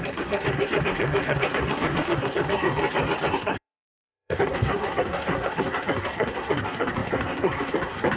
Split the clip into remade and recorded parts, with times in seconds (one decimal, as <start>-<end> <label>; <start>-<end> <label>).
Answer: 0.0-2.8 remade; 2.8-3.3 recorded; 3.3-8.2 remade